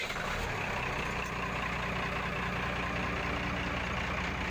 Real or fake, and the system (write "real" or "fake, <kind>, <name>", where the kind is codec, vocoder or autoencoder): real